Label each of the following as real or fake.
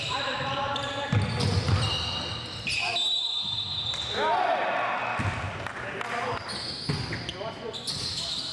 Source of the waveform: real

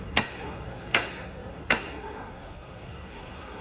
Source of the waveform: fake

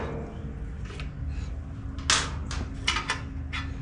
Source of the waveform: real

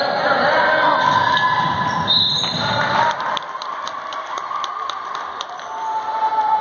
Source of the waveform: real